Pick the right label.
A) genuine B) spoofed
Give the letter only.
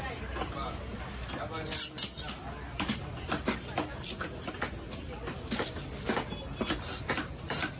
A